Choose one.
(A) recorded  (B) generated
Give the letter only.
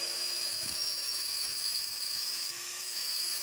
B